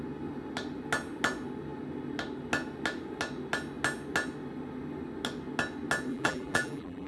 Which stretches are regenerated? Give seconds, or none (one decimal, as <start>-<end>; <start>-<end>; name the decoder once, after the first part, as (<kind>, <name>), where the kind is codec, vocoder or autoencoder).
6.1-7.1 (vocoder, BigVGAN v2)